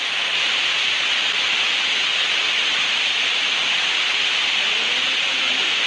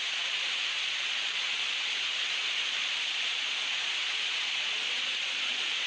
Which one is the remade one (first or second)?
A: second